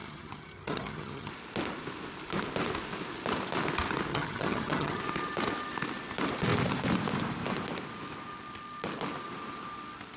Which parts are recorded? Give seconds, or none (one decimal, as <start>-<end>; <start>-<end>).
1.3-4.1; 5.0-10.2

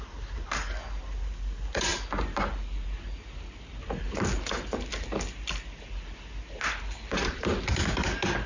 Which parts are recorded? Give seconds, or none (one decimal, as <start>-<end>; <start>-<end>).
0.0-8.5

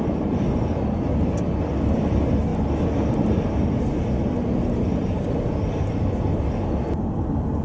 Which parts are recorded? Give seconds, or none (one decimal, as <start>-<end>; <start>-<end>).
0.0-7.6

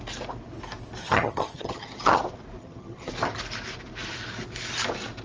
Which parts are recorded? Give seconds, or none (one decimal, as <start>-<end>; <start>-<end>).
0.0-1.0; 2.2-2.6; 3.1-5.2

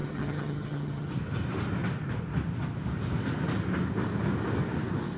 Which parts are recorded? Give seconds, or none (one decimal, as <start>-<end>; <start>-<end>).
1.1-5.2

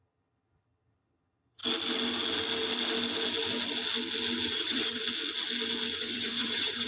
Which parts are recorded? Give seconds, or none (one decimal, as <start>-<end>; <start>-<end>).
1.6-4.5; 5.0-6.0

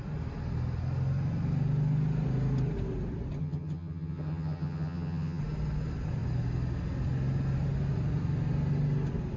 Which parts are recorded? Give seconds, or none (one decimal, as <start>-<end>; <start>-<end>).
0.0-3.4; 5.4-9.4